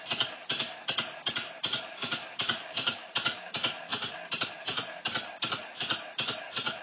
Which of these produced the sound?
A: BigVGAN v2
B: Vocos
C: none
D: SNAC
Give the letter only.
C